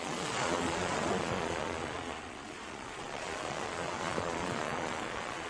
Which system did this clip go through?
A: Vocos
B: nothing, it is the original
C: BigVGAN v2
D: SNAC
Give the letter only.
A